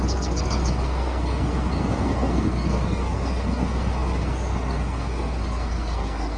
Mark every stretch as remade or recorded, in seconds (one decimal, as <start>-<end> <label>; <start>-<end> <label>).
0.0-6.4 remade

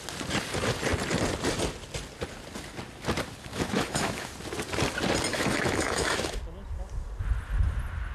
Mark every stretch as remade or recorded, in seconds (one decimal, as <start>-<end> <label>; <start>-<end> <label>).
0.0-3.5 recorded; 3.5-4.3 remade; 4.3-5.3 recorded; 5.3-6.4 remade; 6.4-8.1 recorded

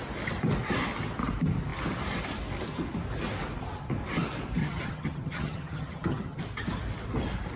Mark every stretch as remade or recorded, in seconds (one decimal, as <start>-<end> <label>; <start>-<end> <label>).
0.0-4.6 recorded; 4.6-6.4 remade; 6.4-7.6 recorded

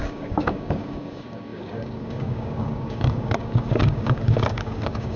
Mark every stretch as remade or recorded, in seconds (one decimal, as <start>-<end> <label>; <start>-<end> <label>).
0.0-5.2 remade

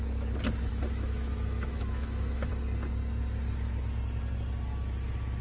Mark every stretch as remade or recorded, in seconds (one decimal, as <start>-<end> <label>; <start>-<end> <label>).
0.0-0.7 recorded; 0.7-2.5 remade; 2.5-5.4 recorded

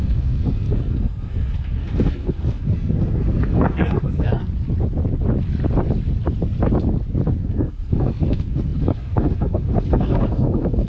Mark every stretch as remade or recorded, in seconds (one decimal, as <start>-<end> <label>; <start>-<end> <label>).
0.0-4.4 remade; 4.4-7.4 recorded; 7.4-10.9 remade